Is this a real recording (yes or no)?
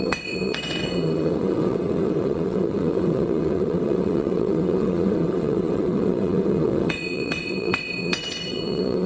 no